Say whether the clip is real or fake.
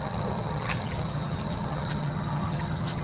fake